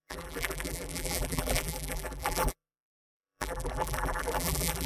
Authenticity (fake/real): fake